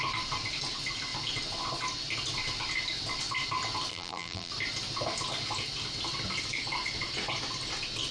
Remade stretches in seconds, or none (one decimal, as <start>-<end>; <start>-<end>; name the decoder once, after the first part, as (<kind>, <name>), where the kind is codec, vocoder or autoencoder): 3.9-4.5 (vocoder, BigVGAN v2)